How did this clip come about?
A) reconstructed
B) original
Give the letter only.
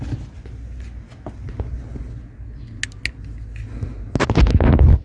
B